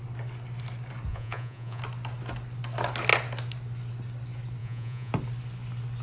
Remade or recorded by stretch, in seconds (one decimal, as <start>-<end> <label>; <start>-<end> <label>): 0.0-1.1 recorded; 1.1-1.8 remade; 1.8-4.6 recorded; 4.6-5.1 remade; 5.1-6.0 recorded